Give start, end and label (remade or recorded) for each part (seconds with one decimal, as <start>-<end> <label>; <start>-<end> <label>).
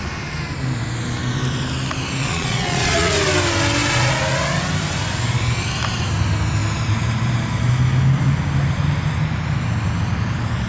0.0-2.2 recorded; 2.2-3.1 remade; 3.1-10.7 recorded